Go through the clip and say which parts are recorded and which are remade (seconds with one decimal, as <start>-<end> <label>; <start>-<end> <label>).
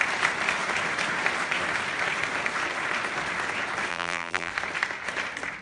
0.0-3.9 recorded; 3.9-4.5 remade; 4.5-5.6 recorded